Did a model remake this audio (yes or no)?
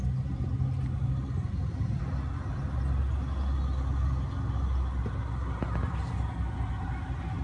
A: no